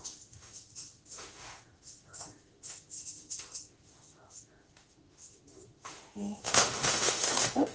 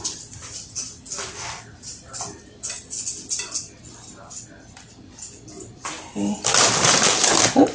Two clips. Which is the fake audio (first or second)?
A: first